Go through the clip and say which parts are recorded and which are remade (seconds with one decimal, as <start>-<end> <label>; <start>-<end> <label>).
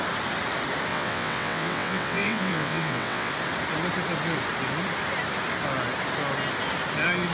0.0-0.9 recorded; 0.9-3.3 remade; 3.3-7.3 recorded